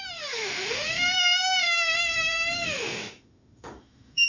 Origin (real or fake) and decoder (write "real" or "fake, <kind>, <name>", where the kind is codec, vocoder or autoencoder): fake, autoencoder, DAC-VAE